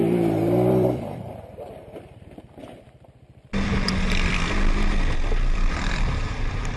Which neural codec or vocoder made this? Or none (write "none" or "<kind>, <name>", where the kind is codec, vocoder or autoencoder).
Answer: vocoder, BigVGAN v2